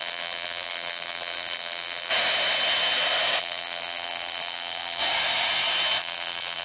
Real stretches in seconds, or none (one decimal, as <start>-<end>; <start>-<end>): 2.1-3.4; 5.0-6.0